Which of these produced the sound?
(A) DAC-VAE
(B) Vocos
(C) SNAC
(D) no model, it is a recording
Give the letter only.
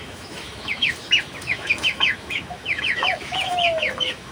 A